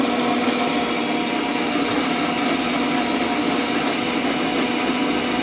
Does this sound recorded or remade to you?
recorded